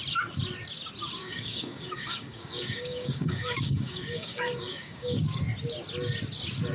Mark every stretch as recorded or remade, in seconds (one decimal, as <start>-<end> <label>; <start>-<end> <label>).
0.0-1.2 recorded; 1.2-5.2 remade; 5.2-6.7 recorded